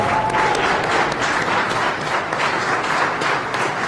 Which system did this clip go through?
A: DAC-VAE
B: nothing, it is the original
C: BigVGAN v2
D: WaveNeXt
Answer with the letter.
B